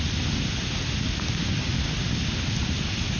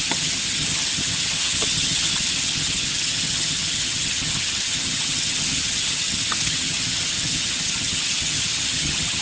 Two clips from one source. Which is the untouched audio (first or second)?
first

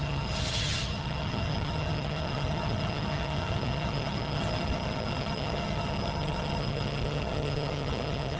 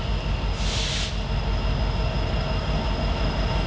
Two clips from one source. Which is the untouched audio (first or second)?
second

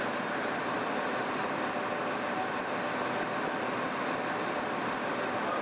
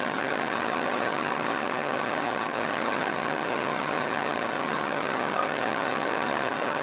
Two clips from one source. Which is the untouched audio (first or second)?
first